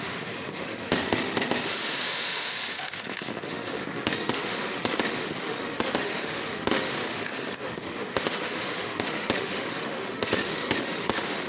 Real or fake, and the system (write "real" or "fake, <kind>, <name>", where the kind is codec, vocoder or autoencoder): fake, autoencoder, DAC-VAE